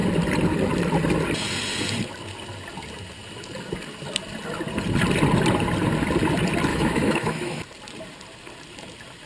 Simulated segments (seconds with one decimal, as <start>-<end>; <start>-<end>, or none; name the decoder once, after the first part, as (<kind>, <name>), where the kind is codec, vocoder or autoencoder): 6.7-7.6 (autoencoder, DAC-VAE)